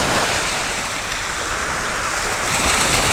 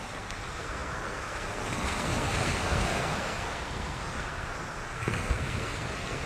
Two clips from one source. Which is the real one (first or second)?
first